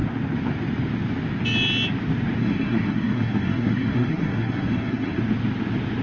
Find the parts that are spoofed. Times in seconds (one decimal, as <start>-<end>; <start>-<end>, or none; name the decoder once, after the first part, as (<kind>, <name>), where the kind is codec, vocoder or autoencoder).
2.4-5.2 (codec, SNAC)